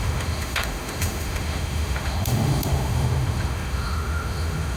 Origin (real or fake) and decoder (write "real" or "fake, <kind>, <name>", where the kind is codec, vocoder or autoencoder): fake, autoencoder, DAC-VAE